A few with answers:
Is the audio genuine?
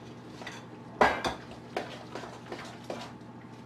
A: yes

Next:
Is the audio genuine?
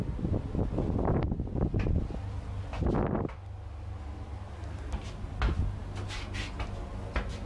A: yes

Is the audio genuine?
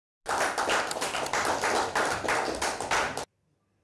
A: yes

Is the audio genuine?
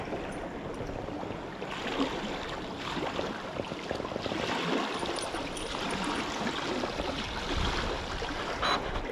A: yes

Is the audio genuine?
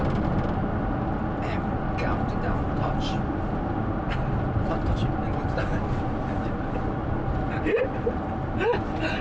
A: yes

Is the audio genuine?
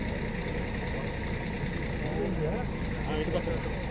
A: yes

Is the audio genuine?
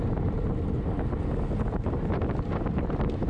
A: yes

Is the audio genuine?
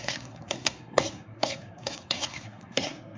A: no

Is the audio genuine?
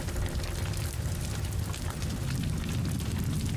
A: yes